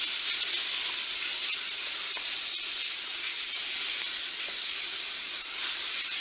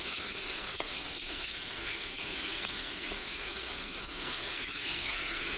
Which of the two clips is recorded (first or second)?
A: first